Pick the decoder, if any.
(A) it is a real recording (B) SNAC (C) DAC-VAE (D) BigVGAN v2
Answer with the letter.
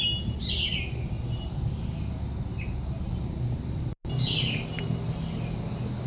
A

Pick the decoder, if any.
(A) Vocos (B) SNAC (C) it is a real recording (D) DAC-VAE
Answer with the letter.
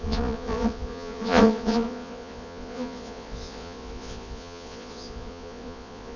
A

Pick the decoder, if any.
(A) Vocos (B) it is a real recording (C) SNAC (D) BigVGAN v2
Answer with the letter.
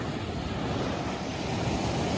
B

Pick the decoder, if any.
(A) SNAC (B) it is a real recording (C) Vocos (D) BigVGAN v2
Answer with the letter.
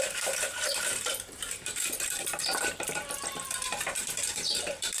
D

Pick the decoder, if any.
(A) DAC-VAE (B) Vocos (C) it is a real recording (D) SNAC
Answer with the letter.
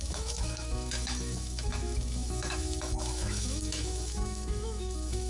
A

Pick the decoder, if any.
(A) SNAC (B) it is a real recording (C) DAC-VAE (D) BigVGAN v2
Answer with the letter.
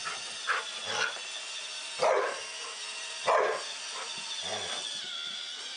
B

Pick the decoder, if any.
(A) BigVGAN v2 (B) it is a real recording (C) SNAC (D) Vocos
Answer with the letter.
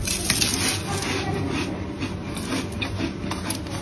B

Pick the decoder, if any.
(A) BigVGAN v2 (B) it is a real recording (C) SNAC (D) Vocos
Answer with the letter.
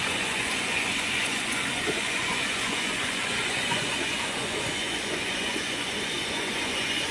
D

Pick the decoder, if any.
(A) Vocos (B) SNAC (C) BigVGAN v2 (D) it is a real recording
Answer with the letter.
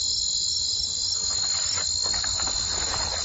D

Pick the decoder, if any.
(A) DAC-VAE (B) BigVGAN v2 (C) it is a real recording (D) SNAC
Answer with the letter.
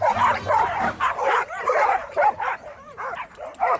B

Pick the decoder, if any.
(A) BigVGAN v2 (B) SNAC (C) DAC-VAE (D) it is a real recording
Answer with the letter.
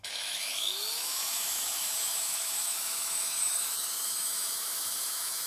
C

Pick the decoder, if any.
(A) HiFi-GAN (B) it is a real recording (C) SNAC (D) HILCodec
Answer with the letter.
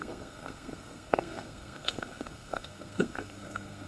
C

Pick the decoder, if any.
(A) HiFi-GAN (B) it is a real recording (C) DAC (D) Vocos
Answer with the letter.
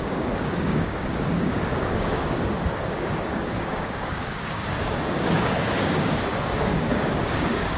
C